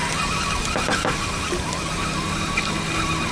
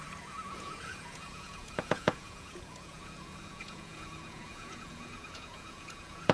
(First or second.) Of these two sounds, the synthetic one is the second